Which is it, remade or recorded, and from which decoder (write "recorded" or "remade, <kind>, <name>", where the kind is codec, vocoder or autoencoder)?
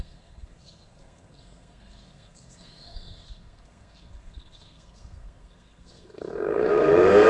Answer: remade, codec, SNAC